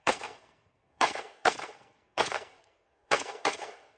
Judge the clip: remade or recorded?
remade